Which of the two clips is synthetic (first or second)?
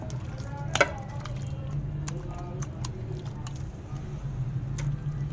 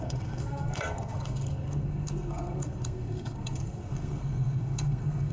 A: second